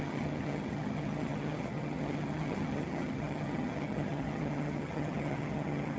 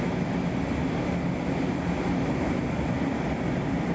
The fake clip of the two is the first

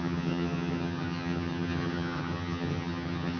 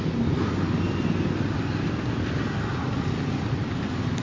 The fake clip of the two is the first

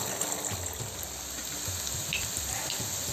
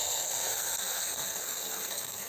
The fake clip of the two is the second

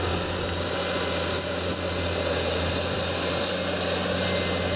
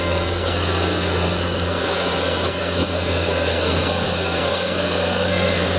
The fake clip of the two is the second